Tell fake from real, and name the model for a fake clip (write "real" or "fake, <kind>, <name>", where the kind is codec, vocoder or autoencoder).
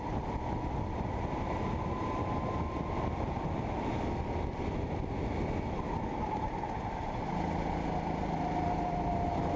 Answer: real